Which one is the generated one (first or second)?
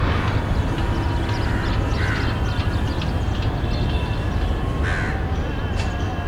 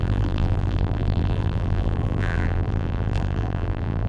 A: second